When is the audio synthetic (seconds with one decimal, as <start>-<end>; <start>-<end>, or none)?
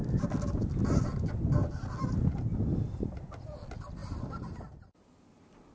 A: none